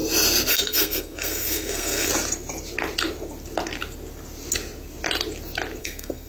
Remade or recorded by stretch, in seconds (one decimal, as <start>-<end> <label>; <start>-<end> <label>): 0.0-0.5 recorded; 0.5-2.1 remade; 2.1-5.8 recorded; 5.8-6.3 remade